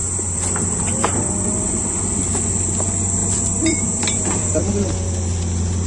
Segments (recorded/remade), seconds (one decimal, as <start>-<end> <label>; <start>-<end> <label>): 0.0-2.0 remade; 2.0-3.2 recorded; 3.2-4.6 remade; 4.6-5.9 recorded